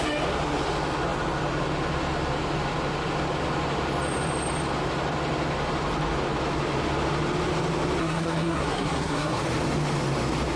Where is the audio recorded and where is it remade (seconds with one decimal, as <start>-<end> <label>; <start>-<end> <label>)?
0.0-8.0 recorded; 8.0-9.4 remade; 9.4-10.6 recorded

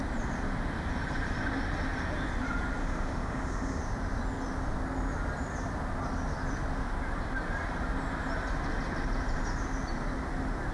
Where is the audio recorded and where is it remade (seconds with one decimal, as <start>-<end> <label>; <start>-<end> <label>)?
0.0-2.8 recorded; 2.8-3.8 remade; 3.8-10.7 recorded